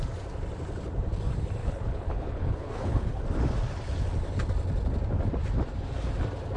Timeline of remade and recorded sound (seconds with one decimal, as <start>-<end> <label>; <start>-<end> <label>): 0.0-1.6 recorded; 1.6-3.2 remade; 3.2-6.6 recorded

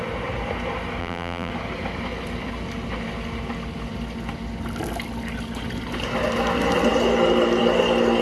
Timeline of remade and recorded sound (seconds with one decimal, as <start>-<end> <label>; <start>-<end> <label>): 0.0-1.0 recorded; 1.0-1.5 remade; 1.5-8.2 recorded

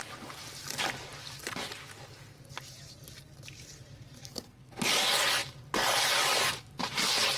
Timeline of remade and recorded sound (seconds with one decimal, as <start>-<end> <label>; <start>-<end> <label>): 0.0-4.2 recorded; 4.2-4.7 remade; 4.7-7.4 recorded

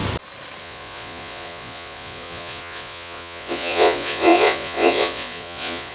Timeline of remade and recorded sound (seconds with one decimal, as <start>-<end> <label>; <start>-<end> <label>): 0.0-0.6 recorded; 0.6-5.9 remade

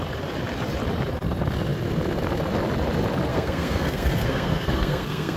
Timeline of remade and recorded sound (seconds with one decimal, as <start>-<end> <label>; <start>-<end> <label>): 0.0-3.3 recorded; 3.3-5.4 remade